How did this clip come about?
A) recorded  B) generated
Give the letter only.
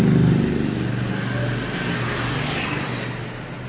A